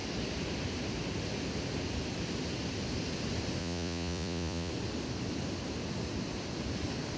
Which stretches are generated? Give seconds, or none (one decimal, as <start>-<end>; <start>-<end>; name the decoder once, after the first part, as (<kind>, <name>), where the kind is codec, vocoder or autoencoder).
3.6-4.7 (vocoder, Vocos)